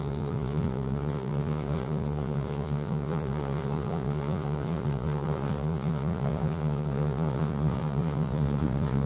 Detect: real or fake fake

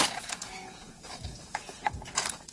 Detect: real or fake fake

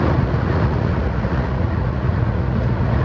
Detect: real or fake fake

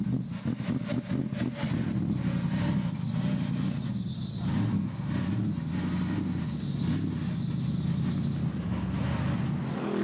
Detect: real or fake real